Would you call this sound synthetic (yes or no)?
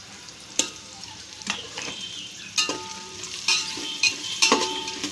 yes